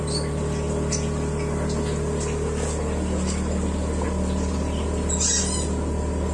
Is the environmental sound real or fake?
real